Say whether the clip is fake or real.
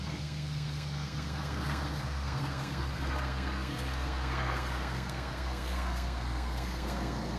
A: fake